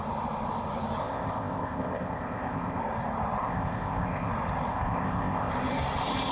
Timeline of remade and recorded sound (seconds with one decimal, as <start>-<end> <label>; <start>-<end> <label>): 0.0-1.0 recorded; 1.0-2.8 remade; 2.8-3.4 recorded; 3.4-4.3 remade; 4.3-4.7 recorded; 4.7-5.5 remade; 5.5-6.3 recorded